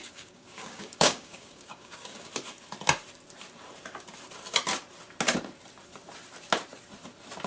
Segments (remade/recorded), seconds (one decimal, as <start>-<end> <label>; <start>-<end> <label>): 0.0-2.3 remade; 2.3-7.5 recorded